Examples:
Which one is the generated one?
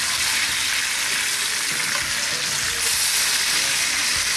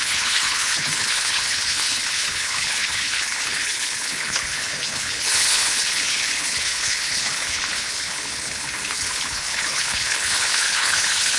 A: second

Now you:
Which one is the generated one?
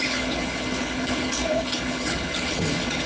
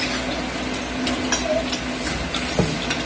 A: first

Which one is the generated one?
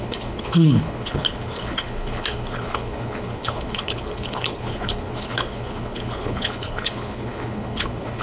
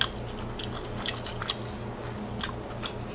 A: first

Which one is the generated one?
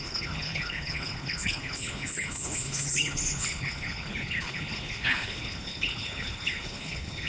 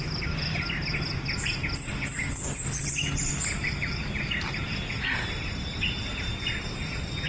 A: first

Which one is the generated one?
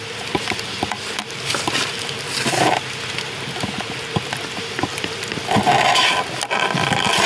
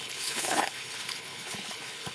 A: second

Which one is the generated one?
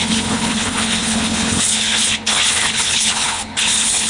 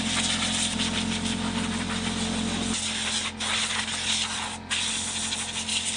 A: first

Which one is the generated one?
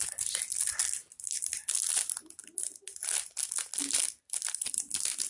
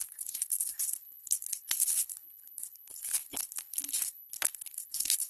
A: second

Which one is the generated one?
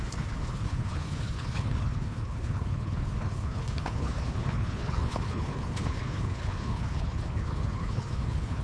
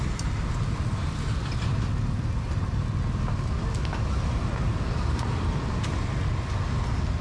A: first